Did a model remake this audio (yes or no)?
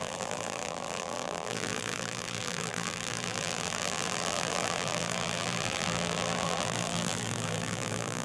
yes